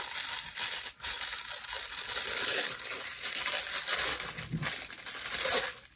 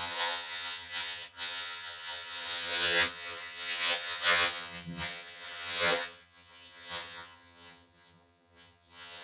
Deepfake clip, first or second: second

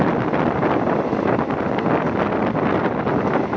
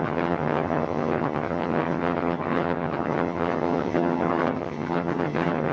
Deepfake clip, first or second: second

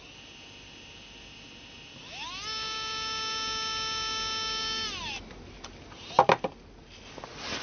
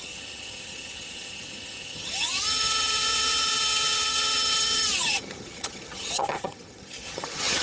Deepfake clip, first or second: second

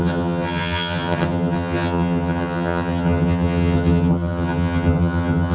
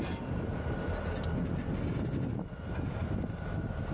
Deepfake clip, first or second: first